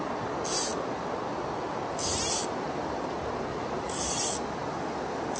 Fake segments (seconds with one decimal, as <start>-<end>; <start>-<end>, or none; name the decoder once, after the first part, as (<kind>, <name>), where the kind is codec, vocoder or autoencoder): 3.5-4.0 (vocoder, Vocos)